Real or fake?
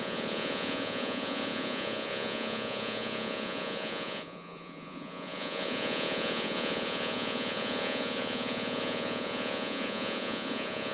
fake